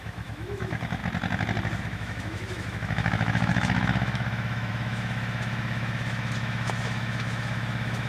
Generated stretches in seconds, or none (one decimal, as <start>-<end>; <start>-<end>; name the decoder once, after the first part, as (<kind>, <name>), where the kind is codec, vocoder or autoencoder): 0.0-1.0 (autoencoder, DAC-VAE); 1.8-8.1